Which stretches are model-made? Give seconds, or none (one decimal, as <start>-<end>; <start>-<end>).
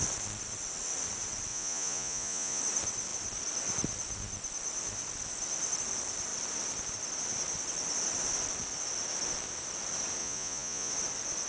1.5-2.6; 10.2-10.9